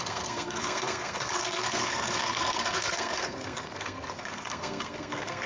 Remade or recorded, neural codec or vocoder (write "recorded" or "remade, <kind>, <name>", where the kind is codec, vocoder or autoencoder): remade, codec, SNAC